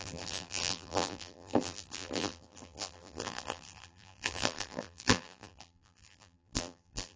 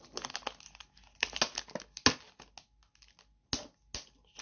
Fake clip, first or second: first